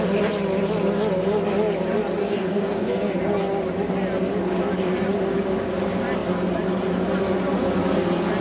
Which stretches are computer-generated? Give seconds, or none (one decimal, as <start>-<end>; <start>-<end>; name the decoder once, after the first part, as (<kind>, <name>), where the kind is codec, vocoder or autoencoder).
2.2-3.2 (codec, SNAC)